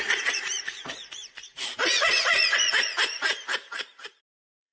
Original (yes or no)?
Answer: no